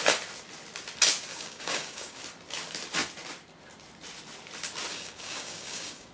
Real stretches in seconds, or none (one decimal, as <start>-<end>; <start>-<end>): 0.0-1.3; 2.2-4.9